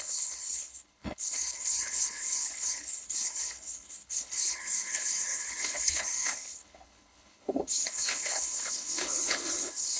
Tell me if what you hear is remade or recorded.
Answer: remade